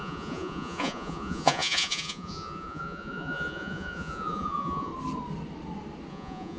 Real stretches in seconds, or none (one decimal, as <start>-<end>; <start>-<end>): 4.9-6.1